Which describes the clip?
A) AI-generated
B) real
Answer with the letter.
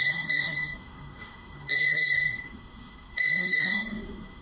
A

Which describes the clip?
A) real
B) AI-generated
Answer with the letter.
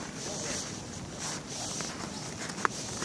A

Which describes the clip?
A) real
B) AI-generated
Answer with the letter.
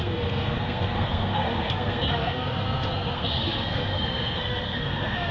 B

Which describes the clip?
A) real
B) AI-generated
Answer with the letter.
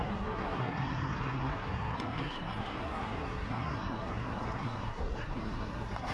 B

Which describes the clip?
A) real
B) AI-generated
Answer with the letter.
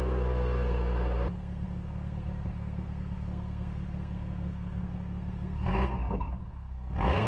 B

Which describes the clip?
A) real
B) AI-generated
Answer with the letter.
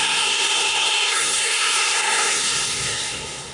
B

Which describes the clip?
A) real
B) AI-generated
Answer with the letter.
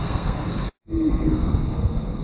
B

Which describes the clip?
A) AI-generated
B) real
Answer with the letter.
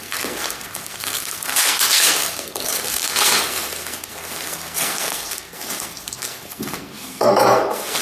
A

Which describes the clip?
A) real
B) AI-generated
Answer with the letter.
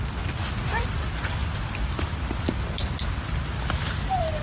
A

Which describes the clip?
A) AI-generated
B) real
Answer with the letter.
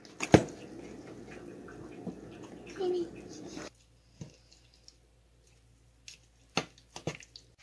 B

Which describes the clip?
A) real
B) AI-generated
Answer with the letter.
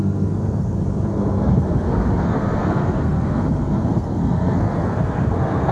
B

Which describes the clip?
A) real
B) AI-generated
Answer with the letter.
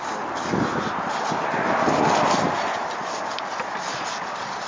A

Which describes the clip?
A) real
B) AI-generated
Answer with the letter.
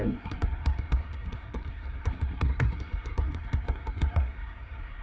B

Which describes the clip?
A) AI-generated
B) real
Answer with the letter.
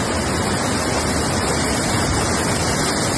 B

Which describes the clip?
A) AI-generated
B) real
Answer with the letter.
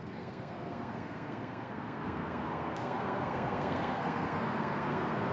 A